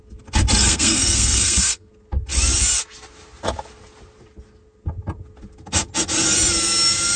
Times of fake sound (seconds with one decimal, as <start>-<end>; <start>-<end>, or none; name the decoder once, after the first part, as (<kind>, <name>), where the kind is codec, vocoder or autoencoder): 0.6-1.9 (codec, SNAC)